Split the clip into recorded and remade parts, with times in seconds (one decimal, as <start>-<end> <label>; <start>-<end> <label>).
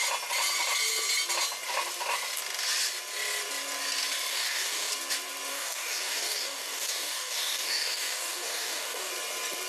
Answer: 0.0-4.3 recorded; 4.3-4.9 remade; 4.9-5.5 recorded; 5.5-9.1 remade; 9.1-9.7 recorded